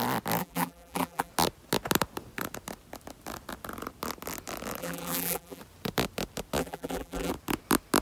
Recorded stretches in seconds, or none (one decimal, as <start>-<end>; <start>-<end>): 0.0-0.4; 1.3-4.8; 5.6-6.6; 7.3-8.0